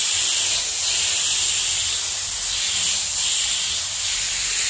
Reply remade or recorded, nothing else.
recorded